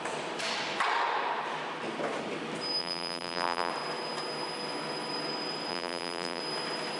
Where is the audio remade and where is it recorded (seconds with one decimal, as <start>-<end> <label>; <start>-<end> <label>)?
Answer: 0.0-2.8 recorded; 2.8-3.7 remade; 3.7-5.7 recorded; 5.7-6.4 remade; 6.4-7.0 recorded